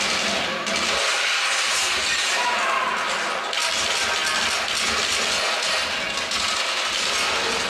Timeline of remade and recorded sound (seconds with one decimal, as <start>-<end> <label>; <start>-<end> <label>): 0.0-7.7 recorded